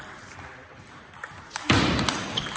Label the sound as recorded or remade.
recorded